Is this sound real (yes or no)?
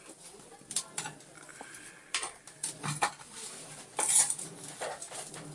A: yes